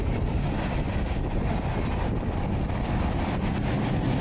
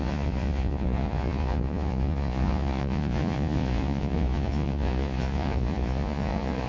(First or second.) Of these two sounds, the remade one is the second